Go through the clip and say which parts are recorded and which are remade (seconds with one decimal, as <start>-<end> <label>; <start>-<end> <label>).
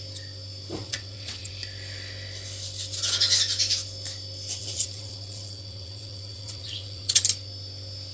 0.0-0.8 recorded; 0.8-1.5 remade; 1.5-4.6 recorded; 4.6-7.2 remade; 7.2-8.1 recorded